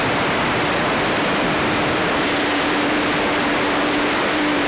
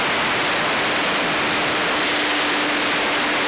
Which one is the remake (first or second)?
first